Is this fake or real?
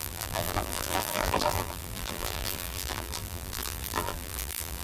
fake